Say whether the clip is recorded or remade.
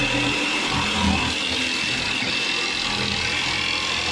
recorded